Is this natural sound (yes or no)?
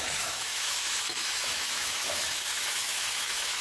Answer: no